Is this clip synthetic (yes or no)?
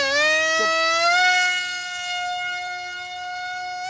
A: no